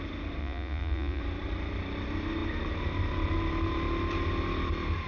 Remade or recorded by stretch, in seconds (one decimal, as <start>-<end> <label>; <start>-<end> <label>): 0.0-0.4 recorded; 0.4-1.2 remade; 1.2-5.1 recorded